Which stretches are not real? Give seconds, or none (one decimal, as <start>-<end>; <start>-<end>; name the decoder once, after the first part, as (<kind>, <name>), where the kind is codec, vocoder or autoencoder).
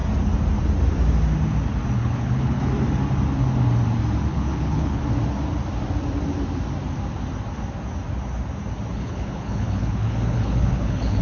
2.0-2.7 (codec, HILCodec); 4.3-5.0; 8.9-11.2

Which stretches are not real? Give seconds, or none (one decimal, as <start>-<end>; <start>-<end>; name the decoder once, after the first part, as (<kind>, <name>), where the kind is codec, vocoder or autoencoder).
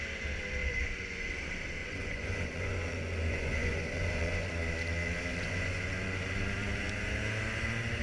0.6-1.3 (vocoder, Vocos); 1.8-4.5; 5.3-6.3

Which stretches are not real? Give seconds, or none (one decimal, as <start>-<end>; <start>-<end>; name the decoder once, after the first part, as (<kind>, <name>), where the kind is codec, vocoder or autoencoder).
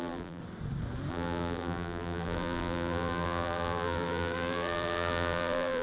0.0-0.4 (vocoder, BigVGAN v2); 1.1-5.8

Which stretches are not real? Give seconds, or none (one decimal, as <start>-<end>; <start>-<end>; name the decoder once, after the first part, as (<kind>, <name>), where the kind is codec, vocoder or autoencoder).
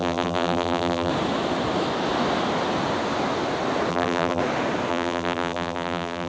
0.0-1.1 (vocoder, BigVGAN v2); 3.9-4.4; 4.9-6.3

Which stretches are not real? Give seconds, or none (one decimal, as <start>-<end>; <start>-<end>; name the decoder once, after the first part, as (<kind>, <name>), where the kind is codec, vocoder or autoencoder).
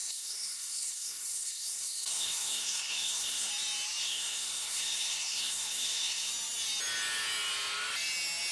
0.0-3.5 (codec, SNAC); 4.0-6.3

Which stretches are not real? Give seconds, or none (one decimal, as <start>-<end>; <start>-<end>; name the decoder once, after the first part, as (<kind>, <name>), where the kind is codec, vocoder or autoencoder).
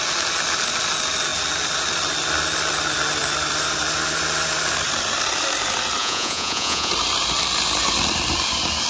6.0-6.9 (vocoder, Vocos)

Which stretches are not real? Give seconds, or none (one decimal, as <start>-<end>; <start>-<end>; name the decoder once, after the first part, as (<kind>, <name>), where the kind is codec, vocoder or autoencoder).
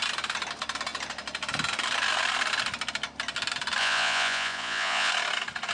3.8-5.1 (vocoder, Vocos)